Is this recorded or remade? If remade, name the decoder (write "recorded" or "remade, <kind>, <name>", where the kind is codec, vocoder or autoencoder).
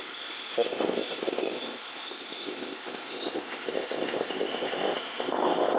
remade, codec, ZipCodec